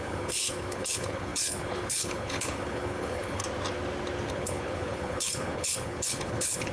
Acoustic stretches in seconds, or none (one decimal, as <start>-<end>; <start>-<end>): 3.4-4.3